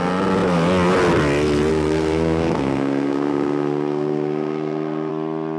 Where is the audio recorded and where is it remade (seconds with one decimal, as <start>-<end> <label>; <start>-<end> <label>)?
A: 0.0-1.7 recorded; 1.7-5.1 remade; 5.1-5.6 recorded